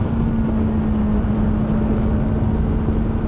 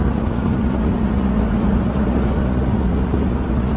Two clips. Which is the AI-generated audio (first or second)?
second